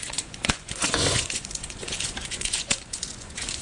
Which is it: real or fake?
fake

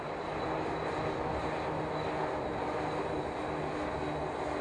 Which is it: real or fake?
real